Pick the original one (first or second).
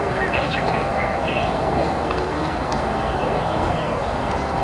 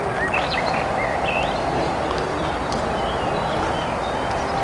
second